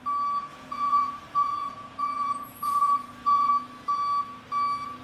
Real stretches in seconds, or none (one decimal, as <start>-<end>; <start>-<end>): 0.0-0.5; 3.5-5.0